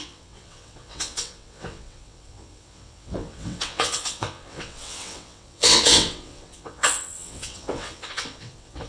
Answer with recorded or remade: remade